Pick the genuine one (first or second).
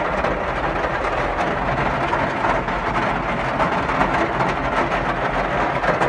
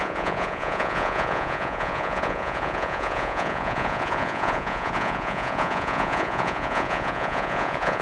first